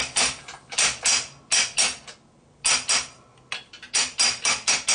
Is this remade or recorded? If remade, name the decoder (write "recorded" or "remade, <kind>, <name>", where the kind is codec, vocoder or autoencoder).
recorded